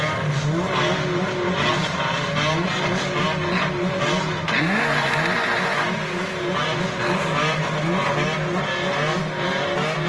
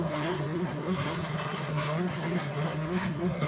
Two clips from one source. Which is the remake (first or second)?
second